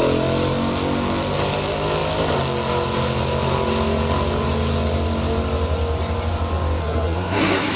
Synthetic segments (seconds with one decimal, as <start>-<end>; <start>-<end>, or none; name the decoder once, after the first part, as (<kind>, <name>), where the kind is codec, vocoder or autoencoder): 6.8-7.8 (codec, SNAC)

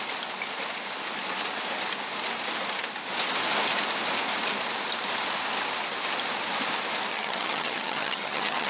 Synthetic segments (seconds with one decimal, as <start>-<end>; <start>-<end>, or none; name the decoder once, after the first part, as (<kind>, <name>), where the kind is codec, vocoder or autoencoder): 7.1-8.7 (vocoder, HiFi-GAN)